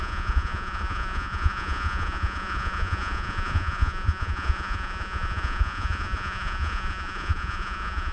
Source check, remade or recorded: remade